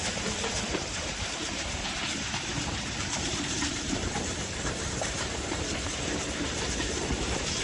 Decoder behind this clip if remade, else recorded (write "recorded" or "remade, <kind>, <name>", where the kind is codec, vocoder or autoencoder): remade, vocoder, BigVGAN v2